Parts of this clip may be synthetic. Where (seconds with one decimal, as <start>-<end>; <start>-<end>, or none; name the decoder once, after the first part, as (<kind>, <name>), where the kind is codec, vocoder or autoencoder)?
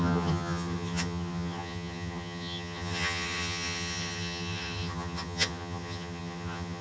0.0-6.8 (vocoder, HiFi-GAN)